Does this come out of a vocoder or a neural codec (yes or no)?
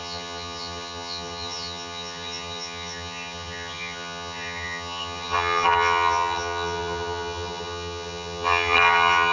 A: yes